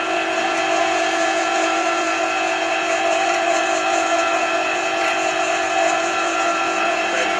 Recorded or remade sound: remade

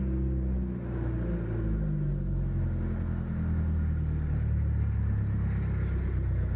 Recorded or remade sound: recorded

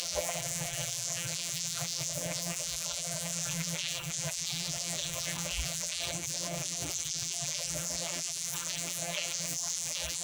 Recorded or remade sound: remade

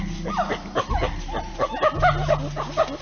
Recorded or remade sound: recorded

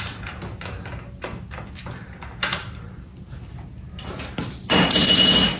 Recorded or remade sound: recorded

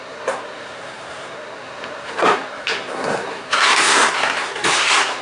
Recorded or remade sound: remade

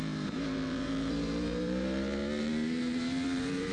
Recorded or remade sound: remade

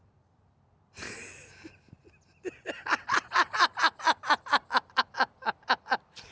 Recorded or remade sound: recorded